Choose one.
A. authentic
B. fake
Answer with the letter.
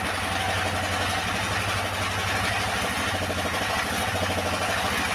A